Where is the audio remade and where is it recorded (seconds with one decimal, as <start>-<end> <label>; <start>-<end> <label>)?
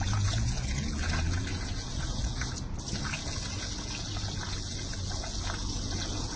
0.0-6.4 remade